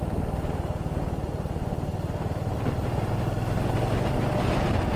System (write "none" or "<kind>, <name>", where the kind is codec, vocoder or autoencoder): none